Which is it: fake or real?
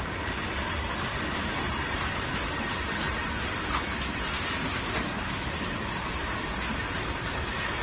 real